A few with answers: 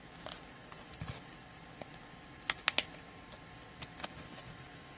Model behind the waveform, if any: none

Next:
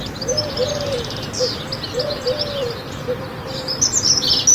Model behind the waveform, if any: none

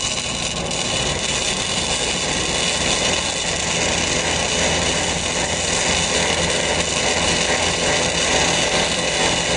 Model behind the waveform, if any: none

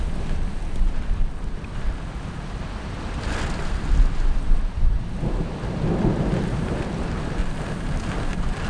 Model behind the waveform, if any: none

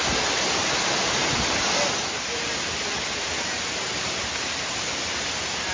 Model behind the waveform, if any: none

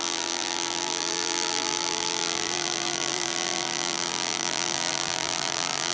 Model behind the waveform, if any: vocoder, BigVGAN v2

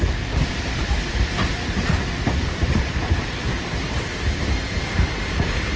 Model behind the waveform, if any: vocoder, BigVGAN v2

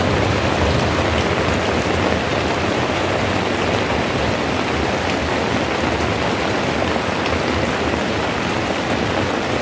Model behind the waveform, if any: none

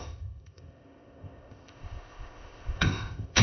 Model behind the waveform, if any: codec, ZipCodec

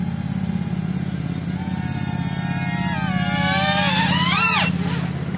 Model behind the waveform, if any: none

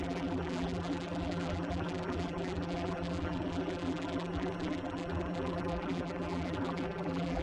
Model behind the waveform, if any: vocoder, BigVGAN v2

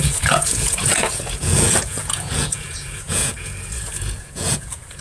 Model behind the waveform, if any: vocoder, Vocos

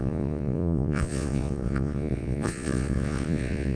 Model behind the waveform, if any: vocoder, Vocos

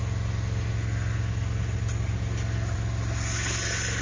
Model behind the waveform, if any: none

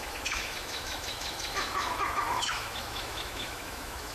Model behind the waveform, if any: autoencoder, DAC-VAE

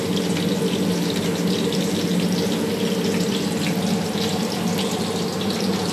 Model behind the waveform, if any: none